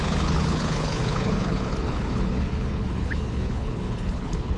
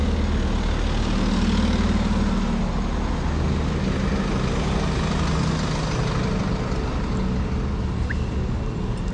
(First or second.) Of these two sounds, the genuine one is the second